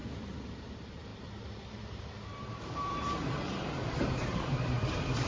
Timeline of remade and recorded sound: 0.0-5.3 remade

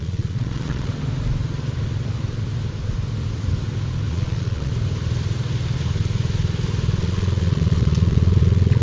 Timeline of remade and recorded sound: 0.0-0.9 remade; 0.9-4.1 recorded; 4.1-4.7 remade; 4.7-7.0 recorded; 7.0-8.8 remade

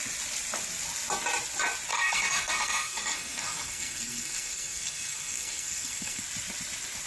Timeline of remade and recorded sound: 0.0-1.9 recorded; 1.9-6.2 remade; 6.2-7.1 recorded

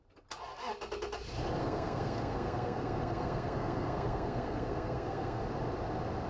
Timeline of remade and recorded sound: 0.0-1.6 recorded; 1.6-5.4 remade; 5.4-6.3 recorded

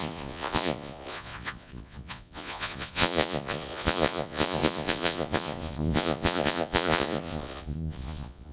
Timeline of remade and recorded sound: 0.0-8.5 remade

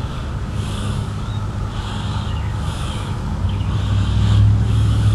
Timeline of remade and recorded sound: 0.0-1.3 remade; 1.3-1.8 recorded; 1.8-5.1 remade